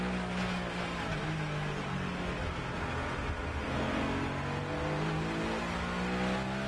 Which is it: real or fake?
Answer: real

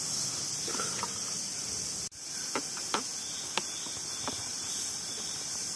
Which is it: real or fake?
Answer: real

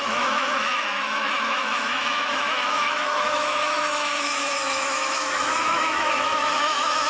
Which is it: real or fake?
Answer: fake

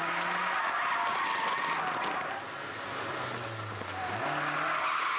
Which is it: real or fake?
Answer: real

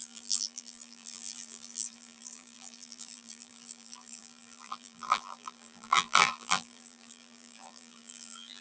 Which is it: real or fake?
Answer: fake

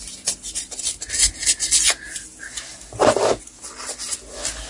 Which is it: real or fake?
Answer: real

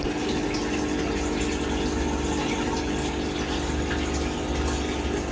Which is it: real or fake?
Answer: real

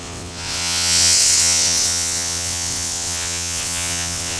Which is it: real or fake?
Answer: fake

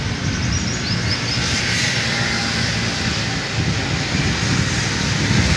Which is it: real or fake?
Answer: real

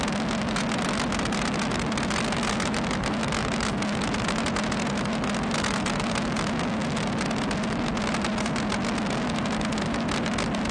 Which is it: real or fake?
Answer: real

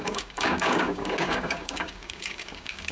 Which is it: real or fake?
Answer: fake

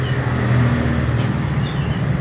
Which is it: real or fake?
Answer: real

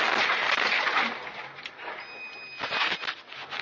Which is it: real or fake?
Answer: real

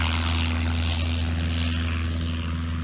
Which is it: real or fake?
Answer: real